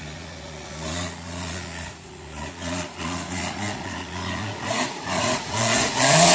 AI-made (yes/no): yes